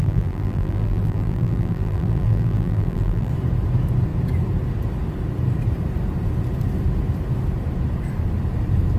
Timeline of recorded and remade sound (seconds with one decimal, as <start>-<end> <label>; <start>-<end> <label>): 0.0-3.3 remade; 3.3-9.0 recorded

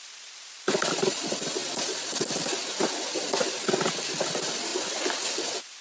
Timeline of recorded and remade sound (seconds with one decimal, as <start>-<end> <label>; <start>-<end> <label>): 0.0-5.8 recorded

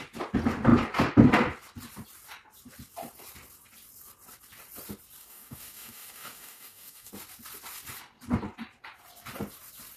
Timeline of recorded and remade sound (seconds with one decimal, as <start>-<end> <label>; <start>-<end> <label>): 0.0-5.2 recorded; 5.2-7.1 remade; 7.1-10.0 recorded

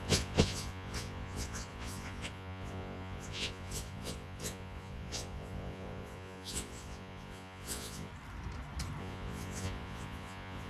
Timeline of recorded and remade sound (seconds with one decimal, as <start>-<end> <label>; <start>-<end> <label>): 0.0-8.1 remade; 8.1-9.0 recorded; 9.0-10.7 remade

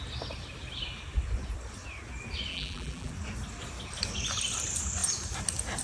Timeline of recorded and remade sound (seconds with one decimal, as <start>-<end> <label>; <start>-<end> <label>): 0.0-2.5 recorded; 2.5-3.1 remade; 3.1-5.8 recorded

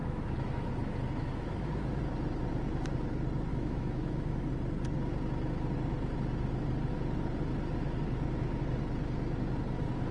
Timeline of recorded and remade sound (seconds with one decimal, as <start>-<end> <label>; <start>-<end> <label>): 0.0-2.0 remade; 2.0-3.5 recorded; 3.5-4.5 remade; 4.5-10.1 recorded

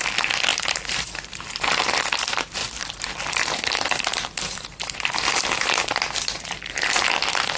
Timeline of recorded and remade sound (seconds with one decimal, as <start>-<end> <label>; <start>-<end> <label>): 0.0-0.5 recorded; 0.5-1.5 remade; 1.5-2.6 recorded; 2.6-7.6 remade